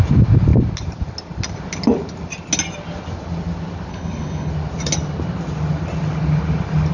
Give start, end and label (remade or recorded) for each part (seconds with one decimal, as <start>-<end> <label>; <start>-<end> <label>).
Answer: 0.0-3.9 recorded; 3.9-4.5 remade; 4.5-6.9 recorded